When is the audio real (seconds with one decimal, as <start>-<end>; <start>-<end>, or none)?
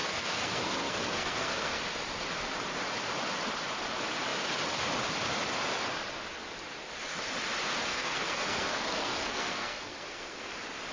1.8-7.9; 10.5-10.9